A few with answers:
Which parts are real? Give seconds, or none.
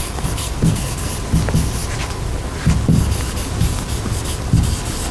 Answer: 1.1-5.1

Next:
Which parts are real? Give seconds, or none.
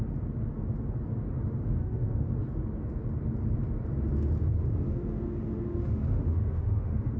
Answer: 0.0-1.8; 2.3-4.7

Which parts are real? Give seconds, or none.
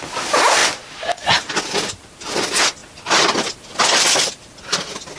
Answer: 0.0-5.2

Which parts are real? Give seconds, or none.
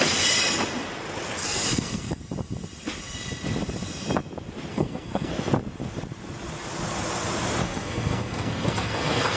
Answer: 0.0-1.4; 2.2-4.7; 5.3-7.6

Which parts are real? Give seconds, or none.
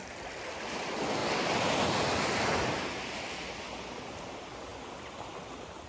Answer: 0.0-1.2; 1.9-5.9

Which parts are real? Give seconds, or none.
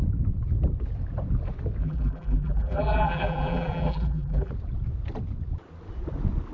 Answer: 0.0-1.8; 4.5-6.5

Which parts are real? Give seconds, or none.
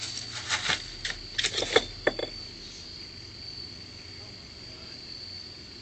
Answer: 0.0-5.8